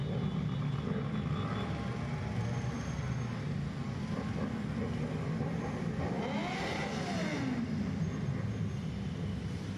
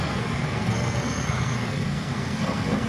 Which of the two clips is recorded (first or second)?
first